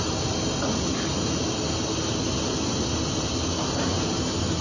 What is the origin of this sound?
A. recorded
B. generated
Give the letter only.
A